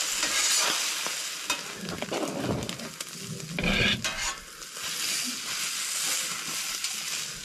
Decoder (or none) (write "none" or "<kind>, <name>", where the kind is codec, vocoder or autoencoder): none